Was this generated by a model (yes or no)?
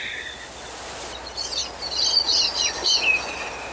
no